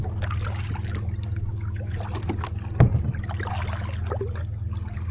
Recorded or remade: recorded